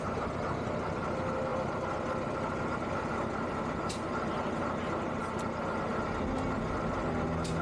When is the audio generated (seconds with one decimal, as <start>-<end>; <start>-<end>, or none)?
1.5-3.6